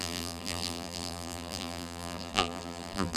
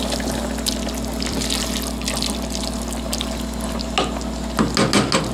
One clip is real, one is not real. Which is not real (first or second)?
first